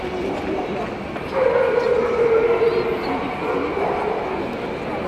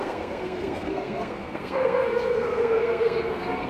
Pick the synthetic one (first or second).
second